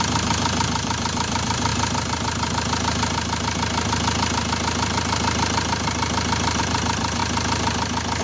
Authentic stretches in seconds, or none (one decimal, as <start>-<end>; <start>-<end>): 1.7-6.6; 7.2-8.2